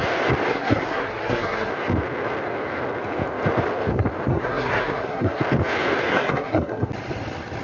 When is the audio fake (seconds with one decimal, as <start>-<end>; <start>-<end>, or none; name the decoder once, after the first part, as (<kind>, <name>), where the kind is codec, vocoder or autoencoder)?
0.5-1.7 (codec, SNAC); 4.3-5.4; 6.1-6.9